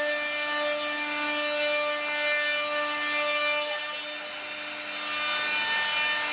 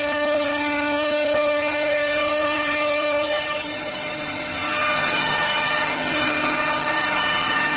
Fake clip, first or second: second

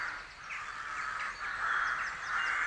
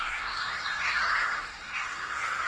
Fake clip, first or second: second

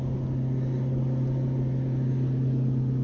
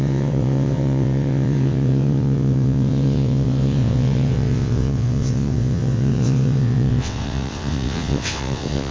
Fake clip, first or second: second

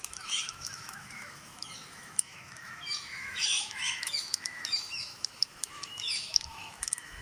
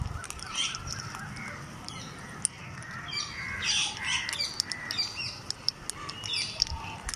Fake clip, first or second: first